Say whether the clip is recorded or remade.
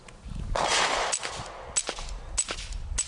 recorded